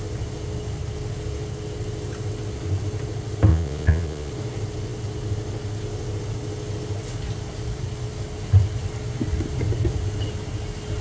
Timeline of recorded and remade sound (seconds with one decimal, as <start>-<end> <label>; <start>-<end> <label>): 0.0-3.5 recorded; 3.5-4.3 remade; 4.3-11.0 recorded